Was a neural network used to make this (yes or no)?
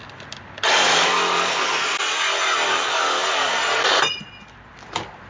no